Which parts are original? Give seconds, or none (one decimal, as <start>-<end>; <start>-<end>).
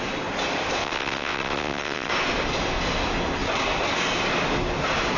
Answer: 0.0-0.8; 2.1-5.2